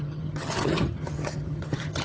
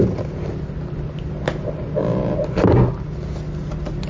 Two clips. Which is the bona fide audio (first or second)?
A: second